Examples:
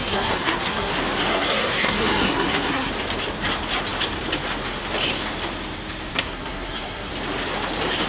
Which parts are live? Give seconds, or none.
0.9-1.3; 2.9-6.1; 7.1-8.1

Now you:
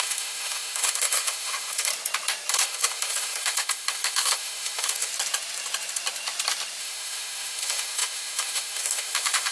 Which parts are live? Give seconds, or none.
1.9-2.5; 5.1-6.8

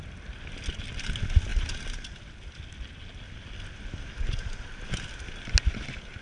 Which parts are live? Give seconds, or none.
0.0-6.2

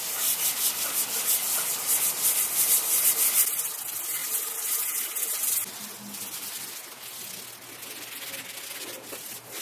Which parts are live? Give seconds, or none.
0.0-9.6

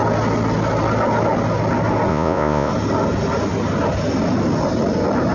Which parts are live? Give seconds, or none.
0.0-2.1; 2.7-5.3